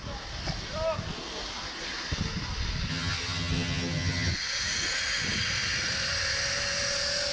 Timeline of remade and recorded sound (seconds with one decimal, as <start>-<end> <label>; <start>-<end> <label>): 0.0-2.9 recorded; 2.9-4.3 remade; 4.3-7.3 recorded